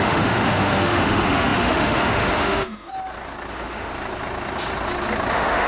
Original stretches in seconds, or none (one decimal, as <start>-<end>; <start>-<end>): 2.9-3.5; 3.9-5.3

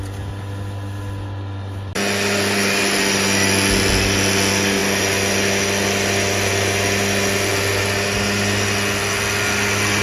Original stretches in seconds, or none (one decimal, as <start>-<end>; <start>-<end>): 0.0-10.0

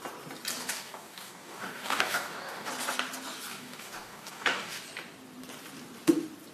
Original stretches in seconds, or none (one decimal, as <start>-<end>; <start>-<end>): 0.0-0.6; 2.7-3.5; 4.8-6.5

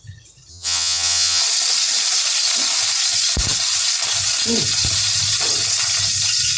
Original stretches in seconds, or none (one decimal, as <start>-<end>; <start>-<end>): 0.0-0.5; 1.4-6.6

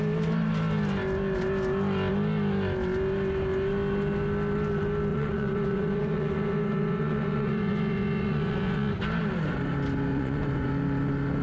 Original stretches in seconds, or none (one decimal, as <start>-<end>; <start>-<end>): 0.0-5.1; 8.9-10.1; 10.7-11.4